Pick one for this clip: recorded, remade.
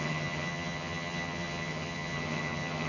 remade